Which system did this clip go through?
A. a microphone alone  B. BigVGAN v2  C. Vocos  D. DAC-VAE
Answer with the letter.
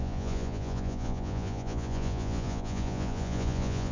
C